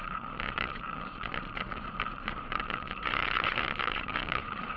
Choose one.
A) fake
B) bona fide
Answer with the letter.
A